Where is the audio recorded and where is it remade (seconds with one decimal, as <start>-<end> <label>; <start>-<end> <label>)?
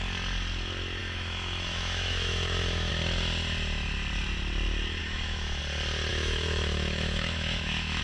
0.0-1.0 recorded; 1.0-2.9 remade; 2.9-5.0 recorded; 5.0-5.6 remade; 5.6-6.1 recorded; 6.1-8.0 remade